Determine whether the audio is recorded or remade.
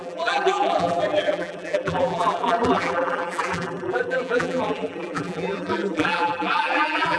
remade